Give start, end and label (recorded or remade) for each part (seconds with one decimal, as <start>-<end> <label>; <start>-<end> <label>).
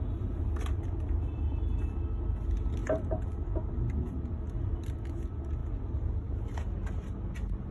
0.0-2.8 recorded; 2.8-4.7 remade; 4.7-5.6 recorded; 5.6-6.6 remade; 6.6-7.7 recorded